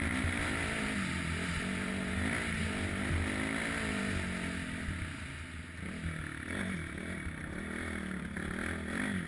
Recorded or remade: recorded